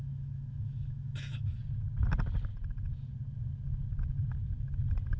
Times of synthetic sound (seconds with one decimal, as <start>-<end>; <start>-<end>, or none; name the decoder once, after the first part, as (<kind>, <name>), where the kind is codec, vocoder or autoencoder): 0.0-1.6 (autoencoder, DAC-VAE)